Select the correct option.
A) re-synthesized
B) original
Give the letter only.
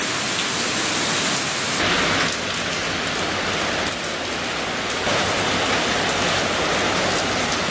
B